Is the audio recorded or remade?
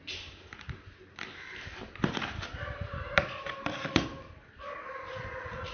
recorded